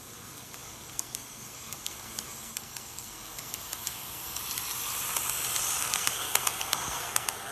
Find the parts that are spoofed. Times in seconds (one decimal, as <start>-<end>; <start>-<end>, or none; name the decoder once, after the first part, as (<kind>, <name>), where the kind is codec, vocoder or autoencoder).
0.0-4.4 (codec, SNAC); 5.8-7.5